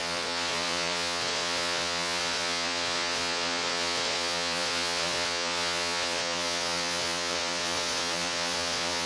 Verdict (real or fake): fake